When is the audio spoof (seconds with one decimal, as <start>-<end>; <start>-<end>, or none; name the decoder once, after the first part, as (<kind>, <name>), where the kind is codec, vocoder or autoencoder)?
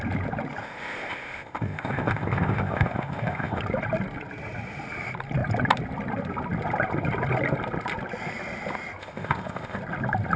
0.6-3.6 (codec, ZipCodec); 9.0-9.8